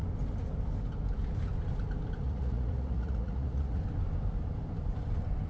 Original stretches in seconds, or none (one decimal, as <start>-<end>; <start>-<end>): 0.0-2.2; 3.8-5.5